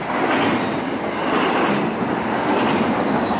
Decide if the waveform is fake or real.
real